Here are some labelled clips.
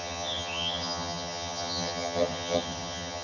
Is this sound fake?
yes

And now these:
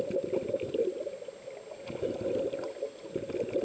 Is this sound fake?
no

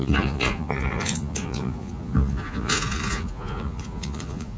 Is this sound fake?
yes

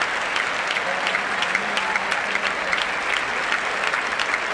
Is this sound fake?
no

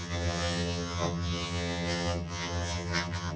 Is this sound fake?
yes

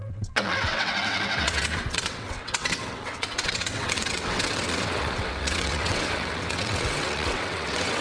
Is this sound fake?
yes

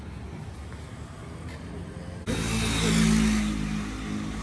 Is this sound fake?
no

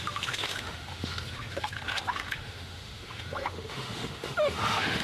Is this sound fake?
yes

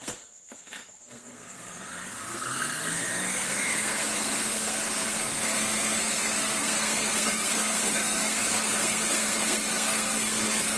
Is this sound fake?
yes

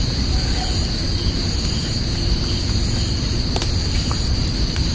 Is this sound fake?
no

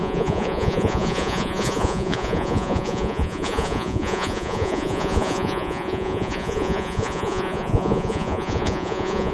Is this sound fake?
yes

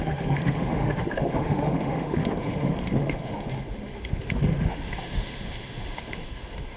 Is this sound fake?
yes